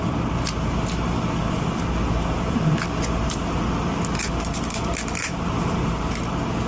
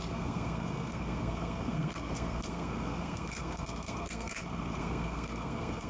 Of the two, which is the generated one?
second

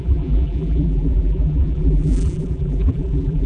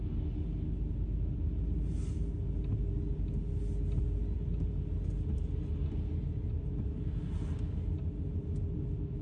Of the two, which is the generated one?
first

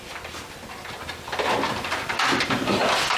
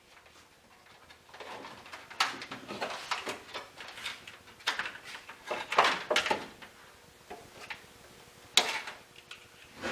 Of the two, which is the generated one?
first